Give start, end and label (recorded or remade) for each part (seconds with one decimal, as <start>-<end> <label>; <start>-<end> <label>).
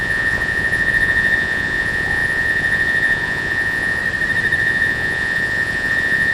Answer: 0.0-4.0 remade; 4.0-4.6 recorded; 4.6-6.3 remade